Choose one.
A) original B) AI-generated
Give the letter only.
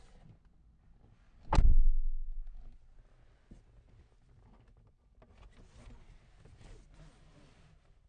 A